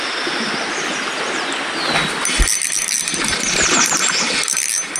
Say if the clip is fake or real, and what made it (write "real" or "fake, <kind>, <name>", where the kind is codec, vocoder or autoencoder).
real